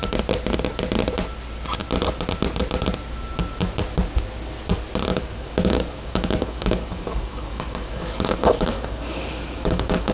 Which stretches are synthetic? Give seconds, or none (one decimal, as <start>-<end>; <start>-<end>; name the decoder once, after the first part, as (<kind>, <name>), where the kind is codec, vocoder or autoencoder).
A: 5.1-10.1 (codec, DAC)